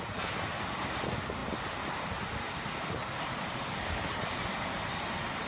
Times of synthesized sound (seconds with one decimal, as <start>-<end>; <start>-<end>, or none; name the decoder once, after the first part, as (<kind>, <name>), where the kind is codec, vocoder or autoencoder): none